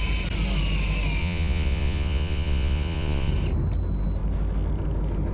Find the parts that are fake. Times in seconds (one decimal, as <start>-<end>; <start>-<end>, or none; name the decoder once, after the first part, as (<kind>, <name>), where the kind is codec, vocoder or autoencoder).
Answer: 1.2-3.3 (vocoder, Vocos)